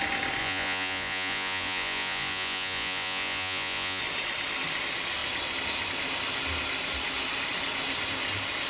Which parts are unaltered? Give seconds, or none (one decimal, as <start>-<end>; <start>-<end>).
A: 0.0-0.4; 4.0-8.7